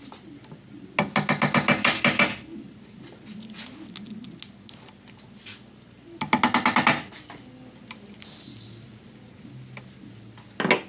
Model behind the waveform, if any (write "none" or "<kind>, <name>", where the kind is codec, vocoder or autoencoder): none